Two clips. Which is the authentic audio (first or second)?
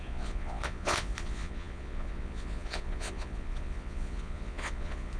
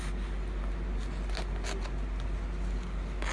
second